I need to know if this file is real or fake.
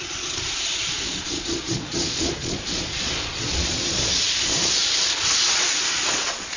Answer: fake